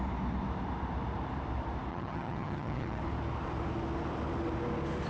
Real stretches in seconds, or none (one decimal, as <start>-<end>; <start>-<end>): 0.0-1.9; 3.0-5.1